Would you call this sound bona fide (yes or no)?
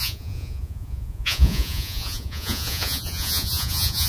no